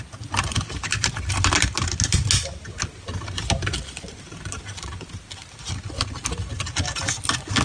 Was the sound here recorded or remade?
recorded